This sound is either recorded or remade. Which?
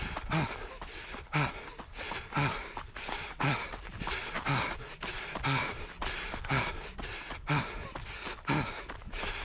recorded